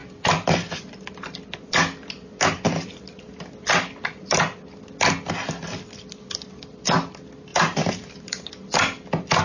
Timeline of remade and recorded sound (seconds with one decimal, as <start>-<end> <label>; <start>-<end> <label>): 0.0-1.1 remade; 1.1-7.5 recorded; 7.5-8.5 remade; 8.5-9.4 recorded